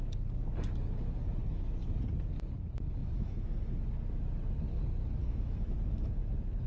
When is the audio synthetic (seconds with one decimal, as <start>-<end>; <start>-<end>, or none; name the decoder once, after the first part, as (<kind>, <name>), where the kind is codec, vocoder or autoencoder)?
3.0-3.8 (autoencoder, DAC-VAE); 5.2-6.1

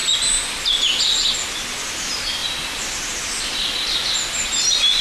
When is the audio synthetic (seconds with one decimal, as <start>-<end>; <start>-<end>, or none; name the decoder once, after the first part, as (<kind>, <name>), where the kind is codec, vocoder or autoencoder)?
none